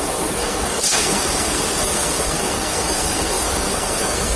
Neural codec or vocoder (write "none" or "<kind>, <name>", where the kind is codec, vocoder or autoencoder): codec, SNAC